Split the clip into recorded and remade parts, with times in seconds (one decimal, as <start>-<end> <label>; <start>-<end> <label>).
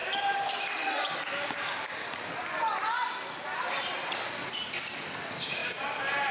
0.0-6.3 recorded